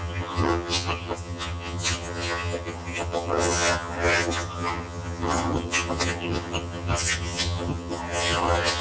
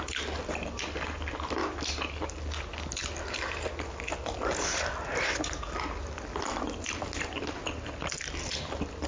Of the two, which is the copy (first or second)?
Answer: first